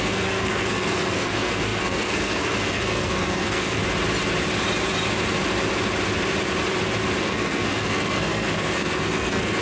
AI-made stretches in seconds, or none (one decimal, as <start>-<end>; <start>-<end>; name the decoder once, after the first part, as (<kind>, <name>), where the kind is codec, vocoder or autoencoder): 0.0-3.8 (codec, SNAC); 7.2-9.6